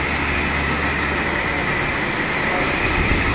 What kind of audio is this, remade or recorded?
recorded